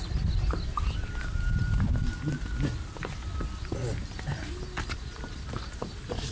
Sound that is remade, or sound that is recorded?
recorded